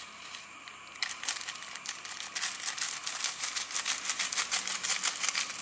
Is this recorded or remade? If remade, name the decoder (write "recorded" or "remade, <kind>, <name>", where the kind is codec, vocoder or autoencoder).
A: recorded